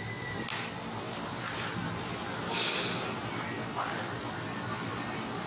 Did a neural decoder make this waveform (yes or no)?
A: no